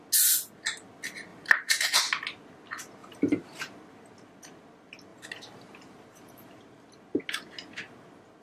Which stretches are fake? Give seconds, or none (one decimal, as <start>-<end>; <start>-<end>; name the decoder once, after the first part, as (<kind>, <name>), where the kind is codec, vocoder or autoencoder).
1.3-2.0 (vocoder, BigVGAN v2); 3.0-3.8; 5.1-6.6